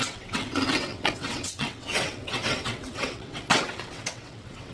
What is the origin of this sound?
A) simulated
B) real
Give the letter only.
A